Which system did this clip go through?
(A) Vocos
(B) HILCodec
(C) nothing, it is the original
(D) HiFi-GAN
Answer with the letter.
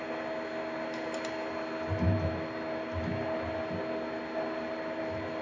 C